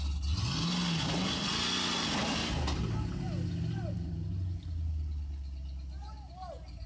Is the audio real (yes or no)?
yes